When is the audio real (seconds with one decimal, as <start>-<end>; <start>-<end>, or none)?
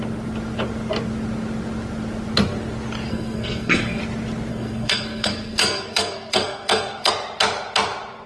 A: 0.0-3.1; 4.0-4.5; 7.1-8.3